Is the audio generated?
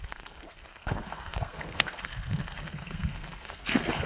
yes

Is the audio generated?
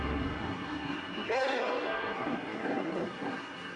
yes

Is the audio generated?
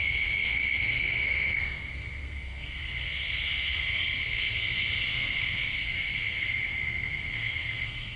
yes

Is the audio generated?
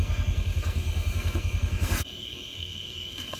yes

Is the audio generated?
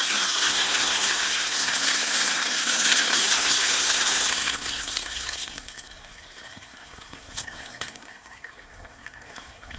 yes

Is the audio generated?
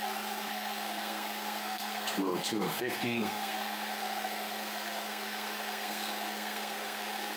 yes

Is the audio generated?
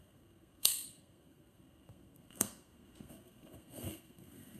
yes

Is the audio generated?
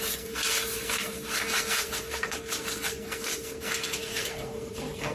yes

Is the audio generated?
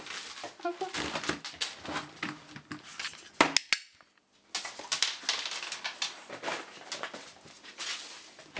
no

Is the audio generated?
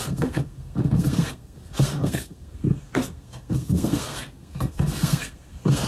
yes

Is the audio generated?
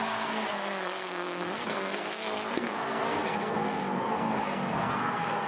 yes